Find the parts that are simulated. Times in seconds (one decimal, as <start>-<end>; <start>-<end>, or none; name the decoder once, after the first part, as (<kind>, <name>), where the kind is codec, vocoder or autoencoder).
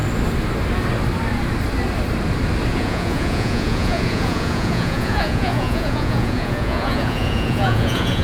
2.7-8.2 (vocoder, Vocos)